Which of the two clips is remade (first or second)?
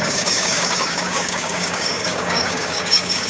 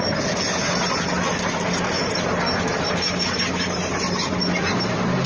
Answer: first